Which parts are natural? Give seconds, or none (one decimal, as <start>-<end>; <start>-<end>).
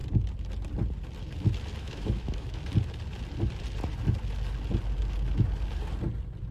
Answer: 0.0-1.8; 2.6-6.5